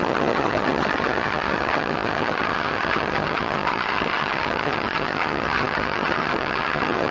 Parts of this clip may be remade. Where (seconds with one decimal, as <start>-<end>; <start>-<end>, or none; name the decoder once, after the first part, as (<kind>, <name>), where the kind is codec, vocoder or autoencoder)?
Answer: 0.0-7.1 (vocoder, HiFi-GAN)